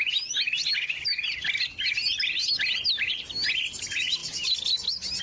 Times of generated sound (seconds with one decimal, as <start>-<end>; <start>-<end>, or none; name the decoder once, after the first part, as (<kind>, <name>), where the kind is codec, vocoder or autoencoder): none